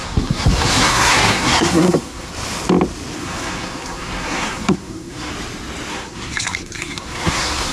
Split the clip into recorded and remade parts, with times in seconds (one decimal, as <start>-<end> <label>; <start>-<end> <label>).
0.0-2.3 remade; 2.3-3.2 recorded; 3.2-5.3 remade; 5.3-5.9 recorded; 5.9-7.7 remade